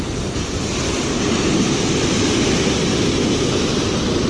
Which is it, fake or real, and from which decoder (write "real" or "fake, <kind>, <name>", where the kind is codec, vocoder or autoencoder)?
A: real